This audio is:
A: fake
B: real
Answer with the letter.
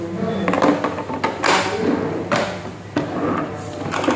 B